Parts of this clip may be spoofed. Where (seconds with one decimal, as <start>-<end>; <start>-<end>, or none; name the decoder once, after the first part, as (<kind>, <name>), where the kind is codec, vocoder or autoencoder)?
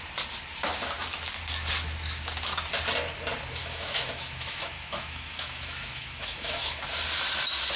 3.6-6.8 (autoencoder, DAC-VAE)